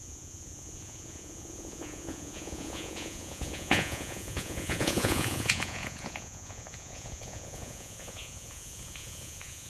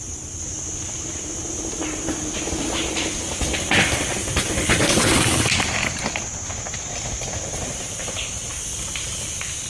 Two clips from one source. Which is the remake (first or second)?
first